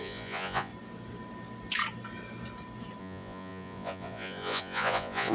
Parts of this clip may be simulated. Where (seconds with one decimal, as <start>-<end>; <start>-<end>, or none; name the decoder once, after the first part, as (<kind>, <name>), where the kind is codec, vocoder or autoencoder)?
0.0-0.7 (vocoder, Vocos); 3.0-5.3